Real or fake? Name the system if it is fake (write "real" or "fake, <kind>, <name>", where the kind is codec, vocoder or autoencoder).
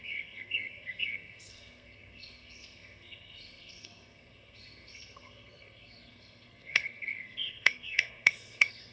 fake, codec, SNAC